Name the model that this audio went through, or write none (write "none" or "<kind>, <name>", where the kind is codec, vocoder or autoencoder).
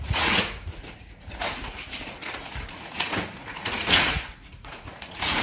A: vocoder, Vocos